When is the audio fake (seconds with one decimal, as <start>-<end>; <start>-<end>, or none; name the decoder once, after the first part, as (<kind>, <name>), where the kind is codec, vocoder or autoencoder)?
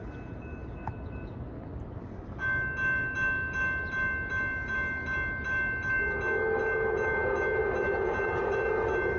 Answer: none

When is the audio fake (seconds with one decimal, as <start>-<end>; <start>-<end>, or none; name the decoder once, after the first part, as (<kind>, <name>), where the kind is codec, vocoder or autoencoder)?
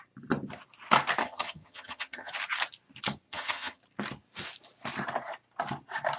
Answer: 1.2-2.3 (vocoder, HiFi-GAN); 3.3-3.8